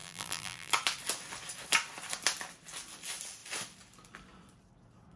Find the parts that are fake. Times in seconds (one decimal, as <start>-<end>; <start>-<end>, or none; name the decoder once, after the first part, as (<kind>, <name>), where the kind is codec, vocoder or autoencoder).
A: 0.0-0.7 (vocoder, BigVGAN v2)